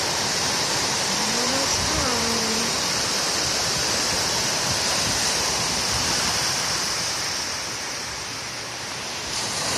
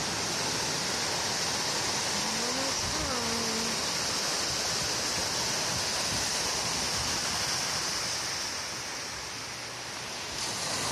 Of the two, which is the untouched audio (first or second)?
second